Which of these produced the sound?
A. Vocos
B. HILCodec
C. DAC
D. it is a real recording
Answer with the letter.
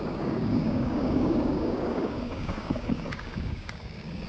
C